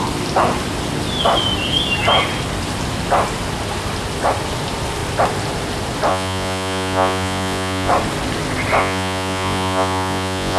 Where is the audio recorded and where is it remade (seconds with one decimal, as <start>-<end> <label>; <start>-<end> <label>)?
0.0-6.1 recorded; 6.1-7.9 remade; 7.9-8.8 recorded; 8.8-10.6 remade

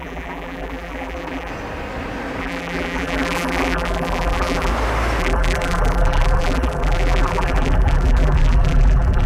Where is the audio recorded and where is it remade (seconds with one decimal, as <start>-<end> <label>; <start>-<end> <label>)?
0.0-1.5 remade; 1.5-2.4 recorded; 2.4-4.7 remade; 4.7-5.2 recorded; 5.2-9.3 remade

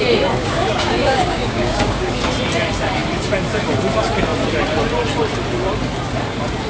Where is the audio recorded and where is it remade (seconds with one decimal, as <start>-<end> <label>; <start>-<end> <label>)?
0.0-0.4 recorded; 0.4-2.1 remade; 2.1-6.7 recorded